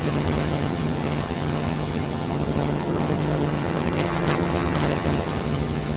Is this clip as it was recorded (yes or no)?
no